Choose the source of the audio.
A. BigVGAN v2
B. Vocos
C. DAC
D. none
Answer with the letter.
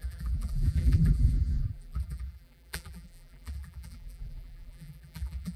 A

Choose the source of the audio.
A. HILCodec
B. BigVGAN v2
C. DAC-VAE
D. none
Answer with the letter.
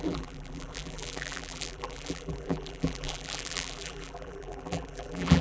B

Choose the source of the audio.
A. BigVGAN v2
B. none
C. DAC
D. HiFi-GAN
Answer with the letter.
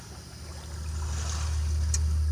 B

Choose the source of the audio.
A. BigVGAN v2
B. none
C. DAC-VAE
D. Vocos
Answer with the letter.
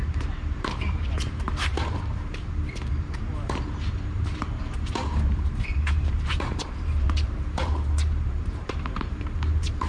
A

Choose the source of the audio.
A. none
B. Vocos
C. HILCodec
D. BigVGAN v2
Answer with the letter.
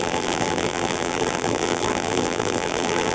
D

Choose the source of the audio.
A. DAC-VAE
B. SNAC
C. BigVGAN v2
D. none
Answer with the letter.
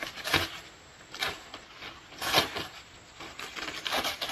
D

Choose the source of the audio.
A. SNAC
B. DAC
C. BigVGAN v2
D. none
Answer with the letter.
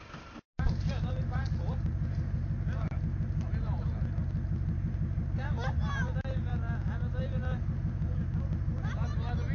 D